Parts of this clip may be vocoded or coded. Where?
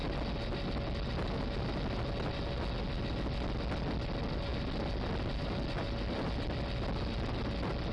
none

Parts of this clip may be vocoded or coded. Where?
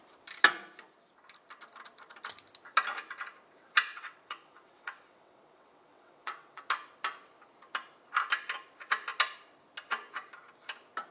3.9-6.6 (vocoder, WaveNeXt)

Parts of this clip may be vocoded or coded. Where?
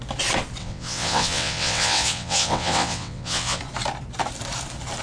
0.6-3.6 (vocoder, WaveNeXt)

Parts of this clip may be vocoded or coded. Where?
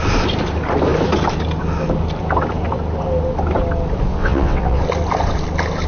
4.1-4.8 (vocoder, WaveNeXt)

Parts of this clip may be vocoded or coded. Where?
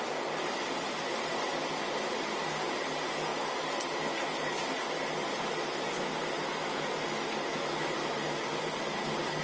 none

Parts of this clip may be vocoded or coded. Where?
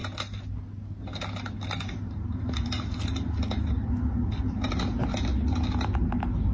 none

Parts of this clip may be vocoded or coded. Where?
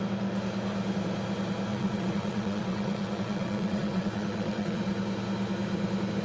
1.7-4.8 (vocoder, WaveNeXt)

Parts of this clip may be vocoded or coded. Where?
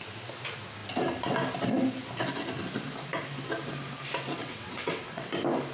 4.4-5.3 (vocoder, WaveNeXt)